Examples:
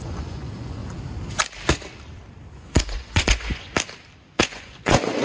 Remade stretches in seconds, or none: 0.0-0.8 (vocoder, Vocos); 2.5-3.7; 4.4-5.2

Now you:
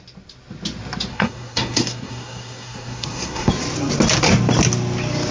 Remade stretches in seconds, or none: 1.1-3.5 (codec, SNAC)

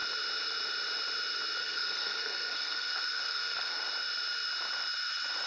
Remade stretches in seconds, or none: 1.6-3.8 (codec, SNAC)